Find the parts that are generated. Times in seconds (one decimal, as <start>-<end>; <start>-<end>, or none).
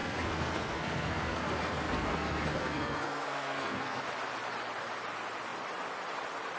0.0-4.0